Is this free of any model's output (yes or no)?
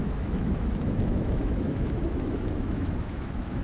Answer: no